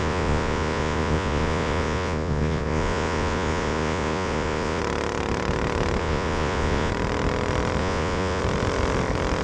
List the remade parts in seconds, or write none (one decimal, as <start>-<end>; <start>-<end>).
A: 0.0-4.8; 6.0-6.9; 7.8-8.4